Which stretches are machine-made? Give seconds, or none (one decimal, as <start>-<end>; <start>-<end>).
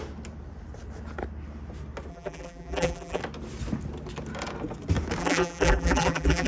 2.1-3.2; 5.2-6.5